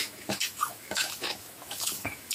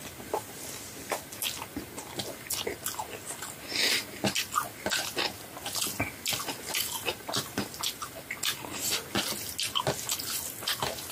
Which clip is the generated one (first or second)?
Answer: first